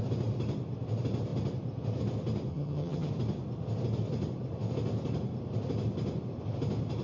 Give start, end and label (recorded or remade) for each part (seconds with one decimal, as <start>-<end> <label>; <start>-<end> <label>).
0.0-2.5 recorded; 2.5-3.1 remade; 3.1-7.0 recorded